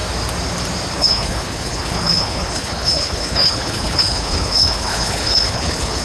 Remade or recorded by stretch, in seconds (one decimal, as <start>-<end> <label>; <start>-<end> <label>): 0.0-0.9 recorded; 0.9-6.0 remade